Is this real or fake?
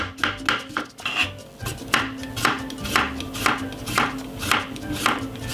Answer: real